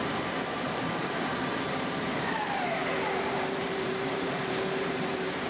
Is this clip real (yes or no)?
no